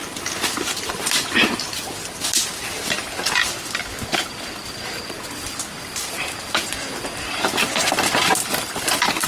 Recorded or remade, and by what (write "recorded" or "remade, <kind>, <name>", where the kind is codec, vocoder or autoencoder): recorded